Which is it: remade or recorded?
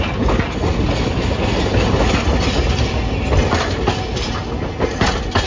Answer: recorded